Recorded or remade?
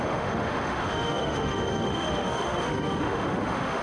remade